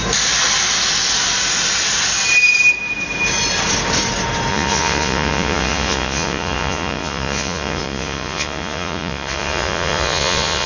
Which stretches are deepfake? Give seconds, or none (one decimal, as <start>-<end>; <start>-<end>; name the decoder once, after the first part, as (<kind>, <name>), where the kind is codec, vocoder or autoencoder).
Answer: 4.5-10.7 (vocoder, Vocos)